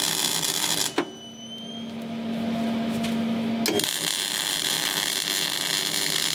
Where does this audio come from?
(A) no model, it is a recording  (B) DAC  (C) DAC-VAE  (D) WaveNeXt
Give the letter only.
A